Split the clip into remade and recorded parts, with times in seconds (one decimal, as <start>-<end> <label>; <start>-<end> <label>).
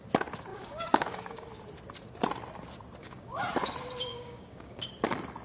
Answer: 0.0-0.5 recorded; 0.5-1.5 remade; 1.5-3.0 recorded; 3.0-3.5 remade; 3.5-4.1 recorded; 4.1-4.9 remade; 4.9-5.4 recorded